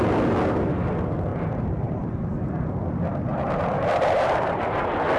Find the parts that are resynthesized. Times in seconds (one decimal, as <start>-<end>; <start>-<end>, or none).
1.3-2.1; 3.3-4.6